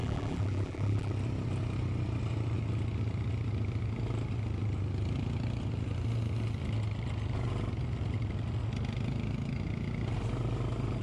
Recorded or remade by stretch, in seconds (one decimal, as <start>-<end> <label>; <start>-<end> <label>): 0.0-1.1 remade; 1.1-11.0 recorded